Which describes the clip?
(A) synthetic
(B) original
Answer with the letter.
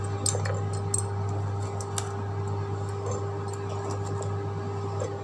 B